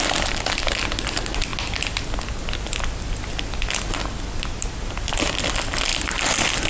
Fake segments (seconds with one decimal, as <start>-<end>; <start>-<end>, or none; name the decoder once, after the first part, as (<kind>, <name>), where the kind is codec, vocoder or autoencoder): none